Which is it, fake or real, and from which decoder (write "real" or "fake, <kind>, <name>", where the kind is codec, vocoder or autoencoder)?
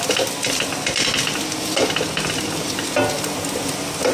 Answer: real